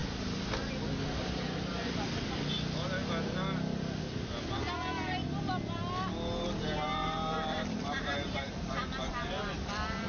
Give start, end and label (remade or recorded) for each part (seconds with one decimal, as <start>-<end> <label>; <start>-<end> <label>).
0.0-7.0 recorded; 7.0-9.6 remade; 9.6-10.1 recorded